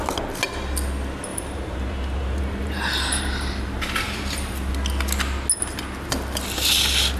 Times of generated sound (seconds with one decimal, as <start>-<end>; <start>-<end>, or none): 1.3-4.7

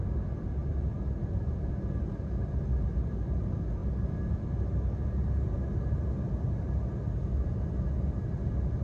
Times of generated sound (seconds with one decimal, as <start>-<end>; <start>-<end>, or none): none

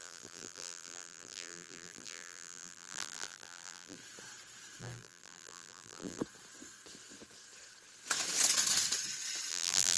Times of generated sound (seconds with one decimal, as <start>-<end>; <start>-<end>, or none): 0.0-4.0; 4.8-6.2; 9.5-10.0

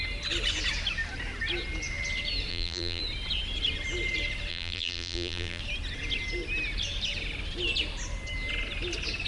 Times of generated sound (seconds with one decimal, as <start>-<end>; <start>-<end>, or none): 2.5-3.0; 4.5-5.6

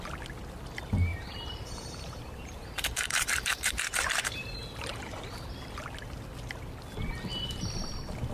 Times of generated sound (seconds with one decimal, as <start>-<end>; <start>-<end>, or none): 1.1-5.4; 7.3-7.9